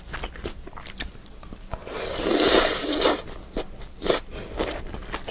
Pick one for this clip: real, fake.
real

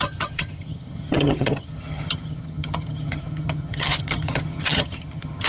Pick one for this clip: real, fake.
fake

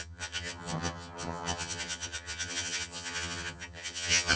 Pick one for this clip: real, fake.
fake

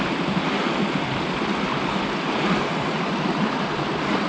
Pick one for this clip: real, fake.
real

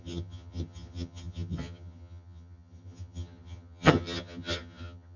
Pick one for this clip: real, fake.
fake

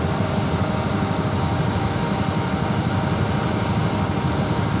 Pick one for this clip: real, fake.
real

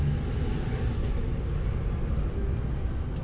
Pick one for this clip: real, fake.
real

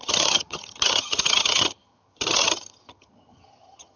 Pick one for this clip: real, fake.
fake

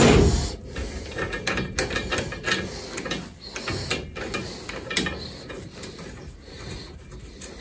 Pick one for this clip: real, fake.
real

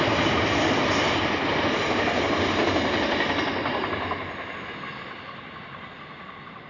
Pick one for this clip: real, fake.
real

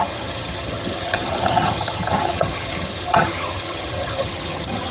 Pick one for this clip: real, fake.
fake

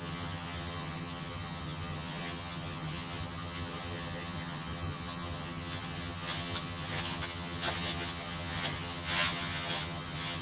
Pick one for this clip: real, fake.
fake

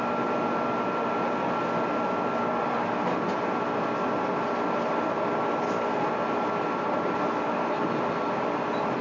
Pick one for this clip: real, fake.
real